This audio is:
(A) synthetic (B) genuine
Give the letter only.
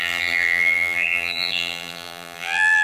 A